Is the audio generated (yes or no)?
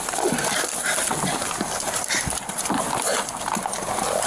no